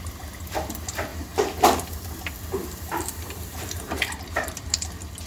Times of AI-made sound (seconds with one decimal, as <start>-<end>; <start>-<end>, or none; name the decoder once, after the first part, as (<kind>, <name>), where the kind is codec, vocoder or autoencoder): 1.1-2.0 (vocoder, BigVGAN v2); 2.6-4.8